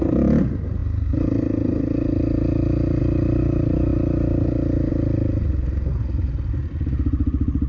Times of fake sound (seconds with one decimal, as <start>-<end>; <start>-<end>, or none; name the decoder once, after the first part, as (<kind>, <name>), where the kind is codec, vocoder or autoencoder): none